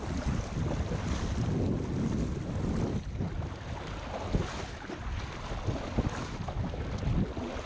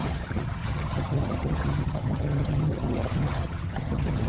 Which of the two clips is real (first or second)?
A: first